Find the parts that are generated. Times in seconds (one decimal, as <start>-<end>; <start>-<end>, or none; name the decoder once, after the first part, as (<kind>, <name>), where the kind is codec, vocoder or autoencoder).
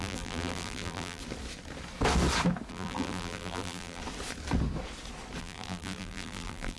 0.0-1.2 (vocoder, BigVGAN v2); 2.7-4.0; 5.4-6.8